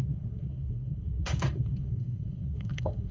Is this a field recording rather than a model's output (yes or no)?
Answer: no